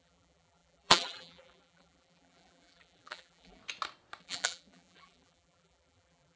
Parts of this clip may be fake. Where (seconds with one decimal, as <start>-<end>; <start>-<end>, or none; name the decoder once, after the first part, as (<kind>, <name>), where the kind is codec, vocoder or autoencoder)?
0.0-3.6 (vocoder, BigVGAN v2); 4.2-6.4